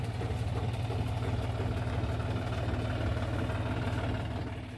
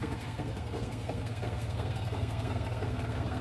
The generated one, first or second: second